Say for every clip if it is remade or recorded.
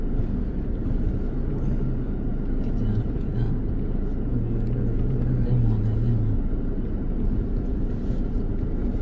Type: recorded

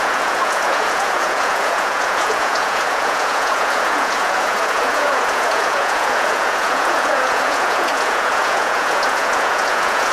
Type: remade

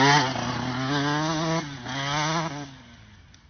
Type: recorded